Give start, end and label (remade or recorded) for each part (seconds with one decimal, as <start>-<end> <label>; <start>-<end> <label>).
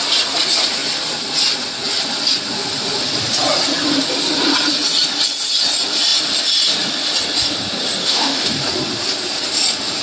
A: 0.0-8.0 recorded; 8.0-8.5 remade; 8.5-10.0 recorded